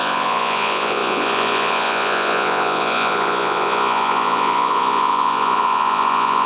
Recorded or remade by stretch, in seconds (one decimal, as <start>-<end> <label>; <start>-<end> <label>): 0.0-6.5 remade